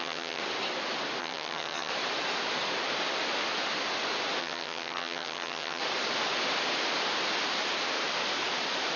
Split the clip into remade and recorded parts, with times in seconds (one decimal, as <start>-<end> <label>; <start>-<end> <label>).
0.0-0.4 remade; 0.4-1.2 recorded; 1.2-1.9 remade; 1.9-4.4 recorded; 4.4-5.8 remade; 5.8-9.0 recorded